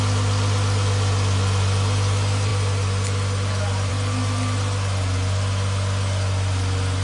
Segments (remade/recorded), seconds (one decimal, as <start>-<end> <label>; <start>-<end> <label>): 0.0-7.0 recorded